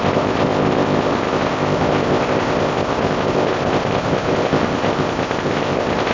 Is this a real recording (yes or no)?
no